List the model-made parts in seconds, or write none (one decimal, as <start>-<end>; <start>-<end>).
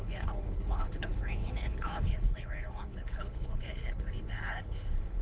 0.0-5.2